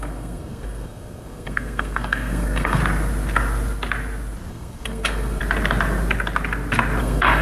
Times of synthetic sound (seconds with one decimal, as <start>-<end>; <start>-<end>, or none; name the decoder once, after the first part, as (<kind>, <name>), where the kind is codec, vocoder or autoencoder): 0.0-2.8 (codec, SNAC); 4.5-5.4; 7.0-7.4